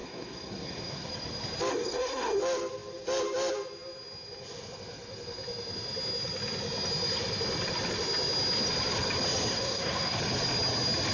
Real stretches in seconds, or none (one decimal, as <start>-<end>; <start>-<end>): 1.1-1.7; 2.4-9.5; 10.2-11.1